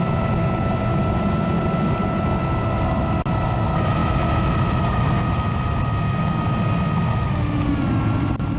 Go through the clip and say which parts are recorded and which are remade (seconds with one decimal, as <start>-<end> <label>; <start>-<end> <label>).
0.0-8.6 recorded